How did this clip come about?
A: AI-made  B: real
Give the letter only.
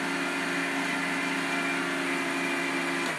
B